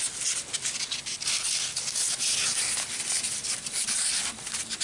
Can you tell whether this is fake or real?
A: real